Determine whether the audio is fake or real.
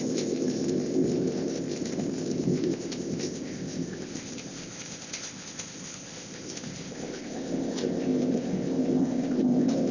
fake